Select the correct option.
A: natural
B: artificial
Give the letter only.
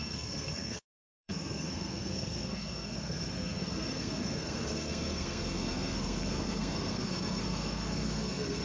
B